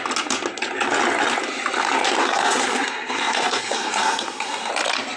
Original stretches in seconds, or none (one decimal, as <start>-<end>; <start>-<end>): 0.0-2.2; 4.7-5.2